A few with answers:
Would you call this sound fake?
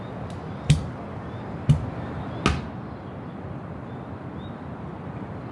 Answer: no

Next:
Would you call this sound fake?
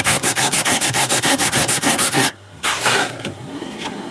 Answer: yes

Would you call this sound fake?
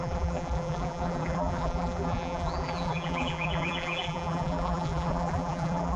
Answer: yes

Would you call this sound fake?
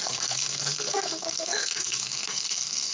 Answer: yes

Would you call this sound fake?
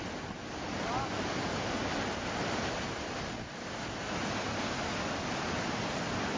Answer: no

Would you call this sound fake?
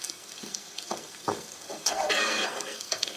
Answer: yes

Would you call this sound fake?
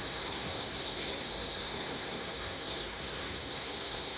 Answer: yes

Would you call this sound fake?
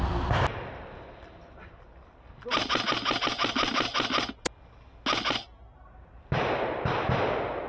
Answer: no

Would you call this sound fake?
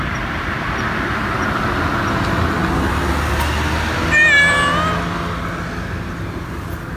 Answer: no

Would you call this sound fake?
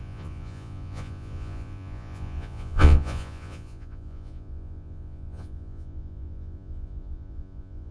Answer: yes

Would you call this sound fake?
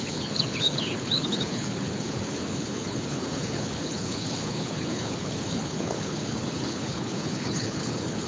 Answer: yes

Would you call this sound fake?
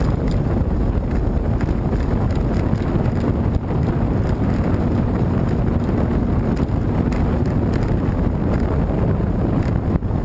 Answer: no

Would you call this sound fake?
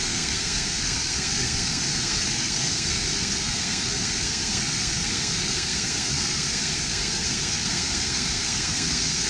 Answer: yes